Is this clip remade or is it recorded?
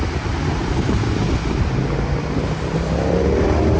recorded